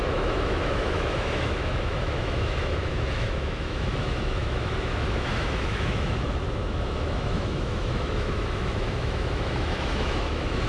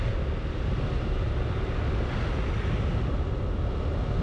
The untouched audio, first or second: second